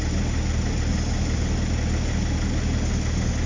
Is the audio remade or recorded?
recorded